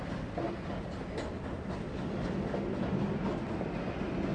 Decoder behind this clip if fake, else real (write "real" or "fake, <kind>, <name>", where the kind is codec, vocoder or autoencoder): real